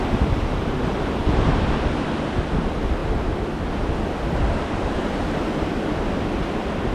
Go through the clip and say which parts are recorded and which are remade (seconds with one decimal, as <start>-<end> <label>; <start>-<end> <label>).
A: 0.0-6.9 recorded